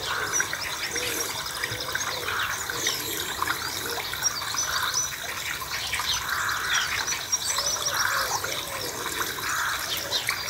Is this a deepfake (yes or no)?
no